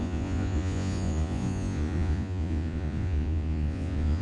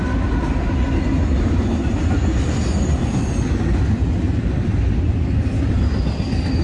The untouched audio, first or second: second